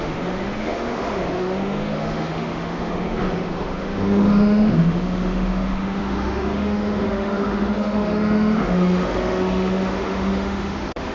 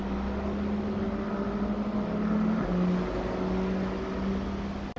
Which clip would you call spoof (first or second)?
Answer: first